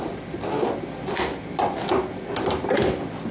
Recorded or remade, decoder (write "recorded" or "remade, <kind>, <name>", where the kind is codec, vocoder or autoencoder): recorded